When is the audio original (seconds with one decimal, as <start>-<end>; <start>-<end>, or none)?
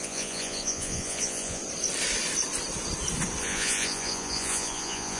1.6-3.4